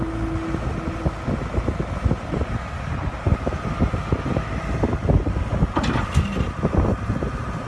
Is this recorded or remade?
recorded